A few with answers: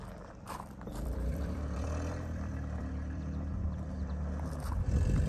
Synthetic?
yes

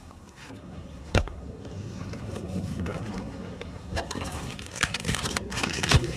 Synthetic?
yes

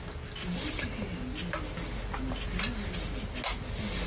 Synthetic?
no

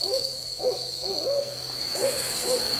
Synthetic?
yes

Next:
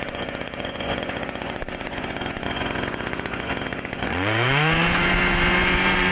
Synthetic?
yes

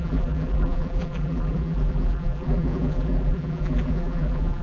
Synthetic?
yes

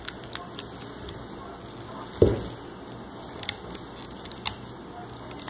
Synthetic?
no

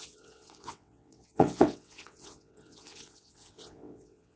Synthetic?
yes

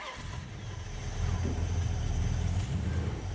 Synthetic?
no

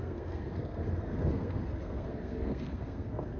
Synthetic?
yes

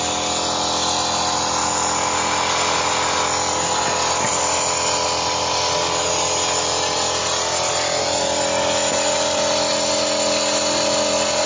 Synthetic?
no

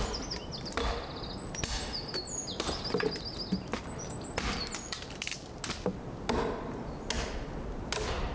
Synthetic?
no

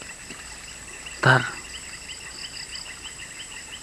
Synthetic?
no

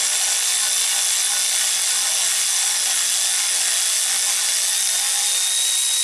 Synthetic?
no